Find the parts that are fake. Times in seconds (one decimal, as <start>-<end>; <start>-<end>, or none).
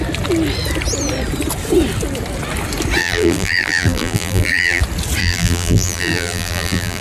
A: 3.0-4.8; 5.2-7.0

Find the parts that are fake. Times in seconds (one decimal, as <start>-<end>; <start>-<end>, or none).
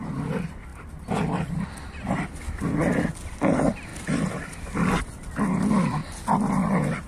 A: 0.7-2.2; 3.9-5.0; 6.0-7.1